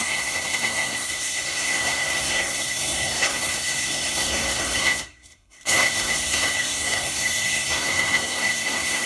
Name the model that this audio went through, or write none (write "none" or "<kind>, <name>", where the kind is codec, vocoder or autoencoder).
codec, SNAC